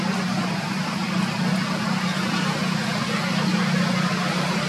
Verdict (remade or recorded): recorded